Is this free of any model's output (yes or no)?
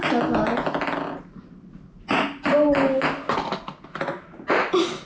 yes